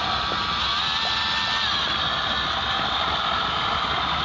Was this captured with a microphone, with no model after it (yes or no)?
yes